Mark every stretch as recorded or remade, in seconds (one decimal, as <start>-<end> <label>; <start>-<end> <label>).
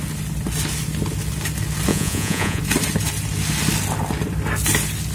0.0-1.9 recorded; 1.9-2.6 remade; 2.6-5.1 recorded